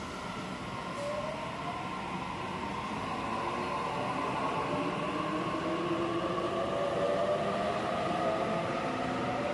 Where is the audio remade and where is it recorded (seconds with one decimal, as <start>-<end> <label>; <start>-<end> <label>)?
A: 0.0-9.5 recorded